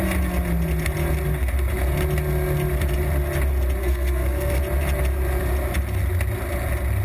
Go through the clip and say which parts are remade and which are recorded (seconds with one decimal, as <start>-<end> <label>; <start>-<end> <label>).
0.0-3.8 recorded; 3.8-4.6 remade; 4.6-7.0 recorded